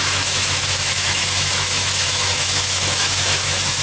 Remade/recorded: remade